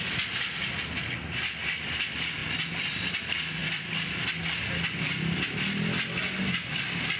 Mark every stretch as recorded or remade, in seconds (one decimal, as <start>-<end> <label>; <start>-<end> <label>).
0.0-3.6 recorded; 3.6-6.2 remade; 6.2-7.2 recorded